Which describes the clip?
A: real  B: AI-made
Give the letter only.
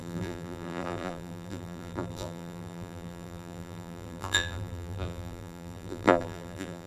B